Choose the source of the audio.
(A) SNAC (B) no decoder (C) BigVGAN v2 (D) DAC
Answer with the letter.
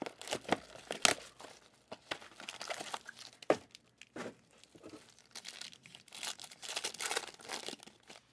B